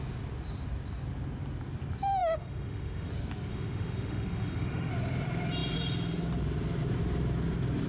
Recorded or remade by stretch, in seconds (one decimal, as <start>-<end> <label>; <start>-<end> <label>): 0.0-2.2 recorded; 2.2-3.1 remade; 3.1-3.5 recorded; 3.5-4.9 remade; 4.9-7.9 recorded